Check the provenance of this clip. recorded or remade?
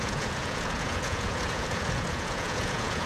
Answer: remade